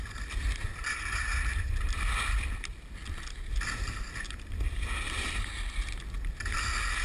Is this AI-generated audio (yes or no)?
no